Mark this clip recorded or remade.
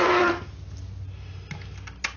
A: recorded